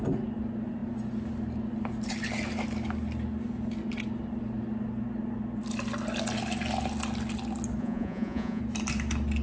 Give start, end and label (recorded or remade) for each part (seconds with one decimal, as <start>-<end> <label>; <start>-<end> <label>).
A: 0.0-7.8 recorded; 7.8-8.6 remade; 8.6-9.4 recorded